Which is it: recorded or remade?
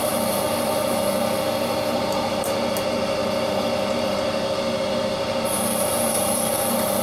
remade